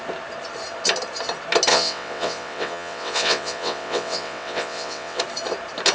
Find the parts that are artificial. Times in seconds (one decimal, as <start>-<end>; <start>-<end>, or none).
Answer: 1.7-5.2